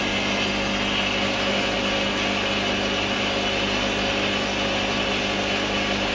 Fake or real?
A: real